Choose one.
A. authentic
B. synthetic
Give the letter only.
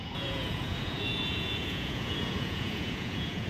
B